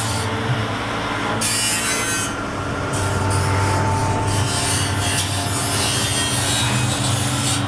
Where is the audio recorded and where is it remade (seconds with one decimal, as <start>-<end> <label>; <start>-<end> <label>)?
0.0-7.7 recorded